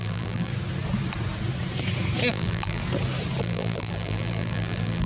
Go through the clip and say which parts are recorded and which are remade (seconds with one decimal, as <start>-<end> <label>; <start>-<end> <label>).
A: 0.0-0.5 remade; 0.5-2.3 recorded; 2.3-2.8 remade; 2.8-3.4 recorded; 3.4-5.1 remade